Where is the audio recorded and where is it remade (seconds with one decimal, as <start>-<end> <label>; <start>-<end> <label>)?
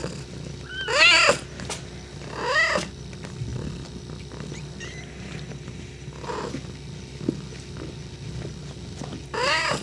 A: 0.0-9.8 recorded